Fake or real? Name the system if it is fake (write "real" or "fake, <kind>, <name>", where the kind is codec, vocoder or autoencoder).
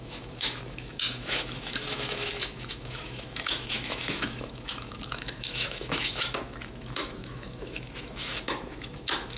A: fake, autoencoder, DAC-VAE